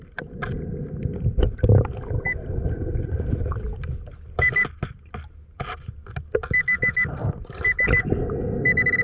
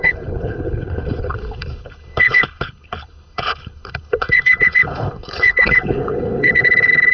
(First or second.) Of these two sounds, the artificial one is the second